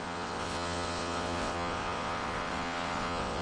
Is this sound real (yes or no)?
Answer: no